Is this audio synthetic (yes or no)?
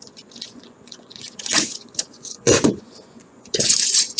yes